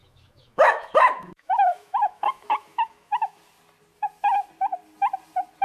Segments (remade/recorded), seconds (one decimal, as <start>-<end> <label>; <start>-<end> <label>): 0.0-3.4 remade; 3.4-5.6 recorded

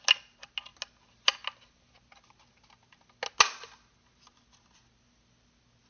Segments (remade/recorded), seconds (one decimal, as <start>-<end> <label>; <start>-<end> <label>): 0.0-5.9 recorded

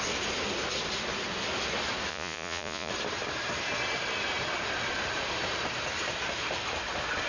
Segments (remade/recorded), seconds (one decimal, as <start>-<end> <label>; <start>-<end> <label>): 0.0-2.1 recorded; 2.1-2.9 remade; 2.9-7.3 recorded